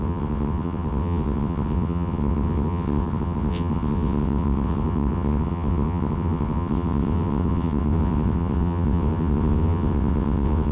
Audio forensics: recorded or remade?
remade